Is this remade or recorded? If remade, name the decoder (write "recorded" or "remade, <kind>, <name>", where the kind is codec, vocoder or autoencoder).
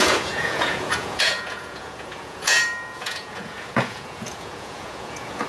remade, vocoder, Vocos